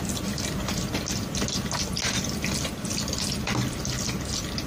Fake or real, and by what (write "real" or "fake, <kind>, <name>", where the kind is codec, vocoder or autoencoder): real